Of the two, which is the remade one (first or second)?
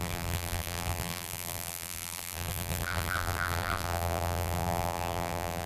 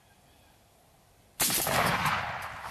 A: first